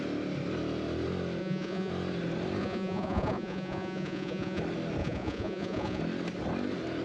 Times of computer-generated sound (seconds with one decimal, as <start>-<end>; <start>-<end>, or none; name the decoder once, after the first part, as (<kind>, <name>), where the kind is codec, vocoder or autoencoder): 1.4-1.9 (vocoder, Vocos); 2.6-4.6; 5.0-6.0